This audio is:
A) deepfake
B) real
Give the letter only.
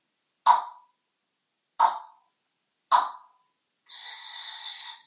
B